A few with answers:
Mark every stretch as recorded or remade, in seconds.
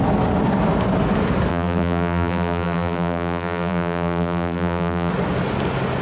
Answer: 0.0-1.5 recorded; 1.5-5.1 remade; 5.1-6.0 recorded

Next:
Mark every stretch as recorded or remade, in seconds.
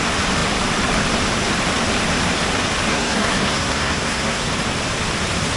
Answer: 0.0-2.9 recorded; 2.9-4.5 remade; 4.5-5.6 recorded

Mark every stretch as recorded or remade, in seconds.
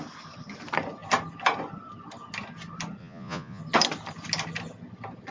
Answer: 0.0-3.0 recorded; 3.0-3.6 remade; 3.6-5.3 recorded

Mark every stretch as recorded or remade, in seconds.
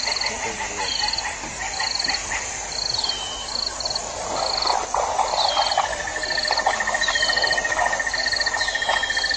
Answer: 0.0-9.4 recorded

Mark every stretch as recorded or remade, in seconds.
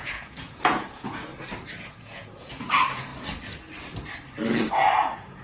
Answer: 0.0-1.3 remade; 1.3-1.9 recorded; 1.9-3.1 remade; 3.1-4.7 recorded; 4.7-5.4 remade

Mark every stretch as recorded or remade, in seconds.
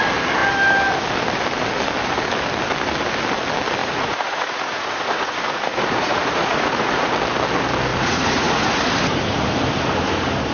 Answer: 0.0-3.8 recorded; 3.8-7.1 remade; 7.1-7.9 recorded; 7.9-8.7 remade; 8.7-10.5 recorded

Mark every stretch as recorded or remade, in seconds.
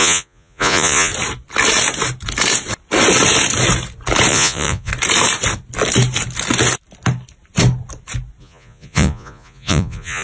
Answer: 0.0-1.1 remade; 1.1-4.3 recorded; 4.3-4.9 remade; 4.9-8.4 recorded; 8.4-10.2 remade